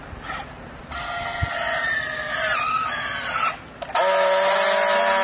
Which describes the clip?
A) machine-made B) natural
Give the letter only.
B